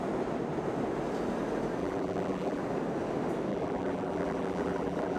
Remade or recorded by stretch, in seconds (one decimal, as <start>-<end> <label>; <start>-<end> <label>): 0.0-1.8 recorded; 1.8-2.6 remade; 2.6-3.5 recorded; 3.5-5.2 remade